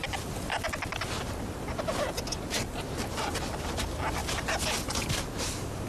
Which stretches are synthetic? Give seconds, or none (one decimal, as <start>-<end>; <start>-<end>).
4.2-5.1